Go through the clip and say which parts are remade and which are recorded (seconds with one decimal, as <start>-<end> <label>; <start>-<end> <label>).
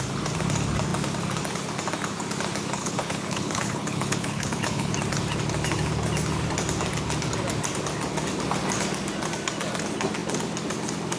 0.0-2.8 recorded; 2.8-4.9 remade; 4.9-11.2 recorded